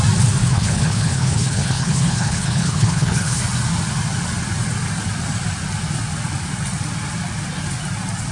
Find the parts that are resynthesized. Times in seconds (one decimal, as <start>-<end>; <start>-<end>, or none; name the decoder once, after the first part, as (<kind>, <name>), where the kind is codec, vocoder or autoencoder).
0.4-3.4 (codec, HILCodec)